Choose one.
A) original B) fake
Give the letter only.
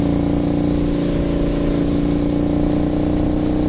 A